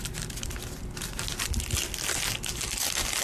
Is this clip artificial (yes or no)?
no